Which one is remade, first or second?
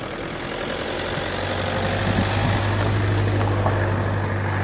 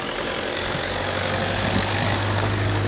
second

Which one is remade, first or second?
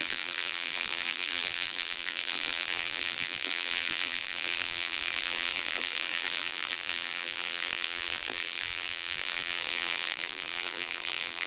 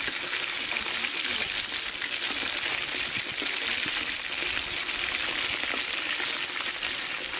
first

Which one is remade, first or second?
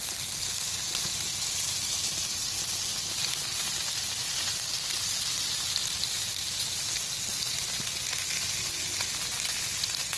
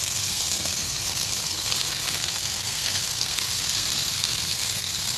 second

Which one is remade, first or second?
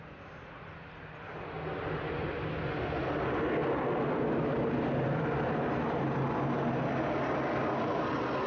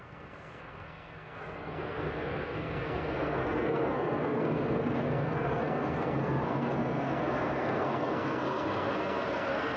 second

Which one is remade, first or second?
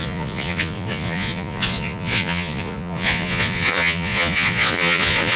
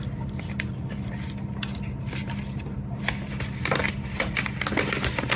first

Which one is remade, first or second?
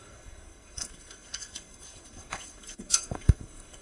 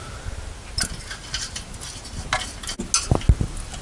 first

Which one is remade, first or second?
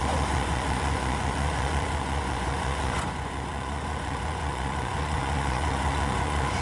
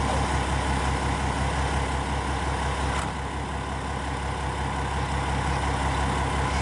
first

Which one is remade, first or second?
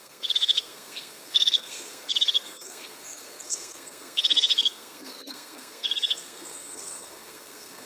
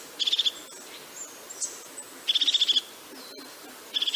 first